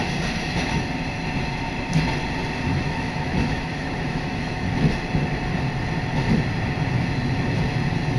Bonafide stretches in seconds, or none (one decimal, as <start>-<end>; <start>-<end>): 0.0-2.7; 4.9-8.2